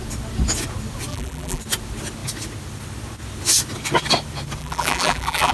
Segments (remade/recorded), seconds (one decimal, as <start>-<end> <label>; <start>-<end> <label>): 0.0-1.1 recorded; 1.1-1.6 remade; 1.6-4.6 recorded; 4.6-5.5 remade